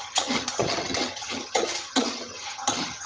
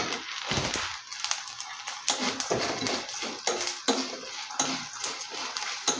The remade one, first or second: first